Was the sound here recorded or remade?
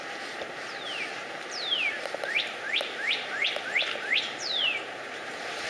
remade